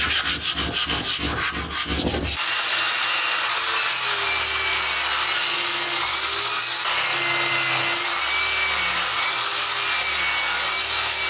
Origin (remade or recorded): recorded